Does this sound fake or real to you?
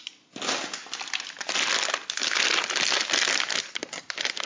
real